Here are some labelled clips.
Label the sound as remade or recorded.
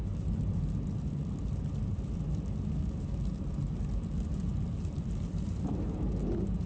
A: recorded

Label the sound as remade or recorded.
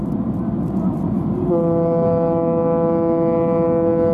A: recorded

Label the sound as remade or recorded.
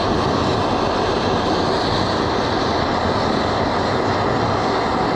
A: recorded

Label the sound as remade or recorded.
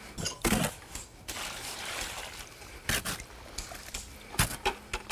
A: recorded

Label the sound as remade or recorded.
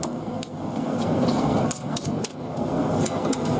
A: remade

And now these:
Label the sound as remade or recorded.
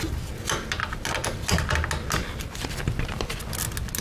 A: recorded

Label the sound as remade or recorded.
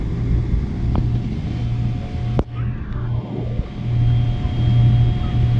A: recorded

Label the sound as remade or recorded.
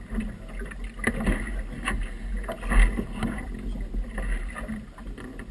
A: recorded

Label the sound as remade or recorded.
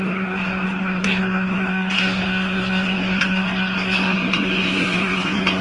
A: remade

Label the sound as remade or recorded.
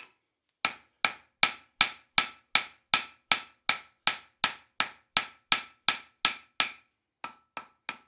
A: recorded